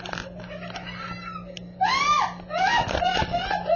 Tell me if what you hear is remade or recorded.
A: recorded